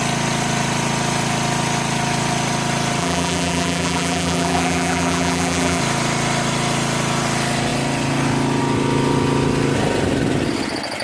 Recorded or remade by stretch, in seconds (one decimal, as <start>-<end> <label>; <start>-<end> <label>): 0.0-3.0 recorded; 3.0-5.8 remade; 5.8-11.0 recorded

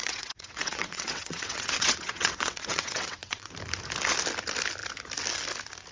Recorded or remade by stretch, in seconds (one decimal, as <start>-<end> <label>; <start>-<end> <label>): 0.0-3.5 remade; 3.5-5.9 recorded

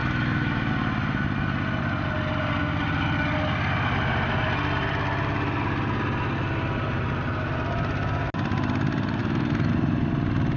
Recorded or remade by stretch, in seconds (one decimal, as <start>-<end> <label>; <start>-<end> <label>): 0.0-0.7 remade; 0.7-9.2 recorded; 9.2-9.7 remade; 9.7-10.6 recorded

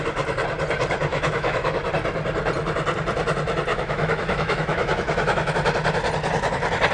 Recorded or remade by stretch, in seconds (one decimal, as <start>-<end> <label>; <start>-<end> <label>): 0.0-1.1 recorded; 1.1-1.8 remade; 1.8-3.7 recorded; 3.7-5.5 remade; 5.5-6.9 recorded

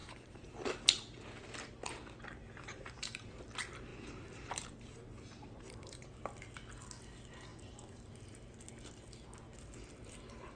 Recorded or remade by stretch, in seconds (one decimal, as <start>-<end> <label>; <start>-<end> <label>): 0.0-0.5 remade; 0.5-2.4 recorded; 2.4-3.3 remade; 3.3-3.9 recorded; 3.9-6.2 remade; 6.2-7.5 recorded; 7.5-8.1 remade; 8.1-10.6 recorded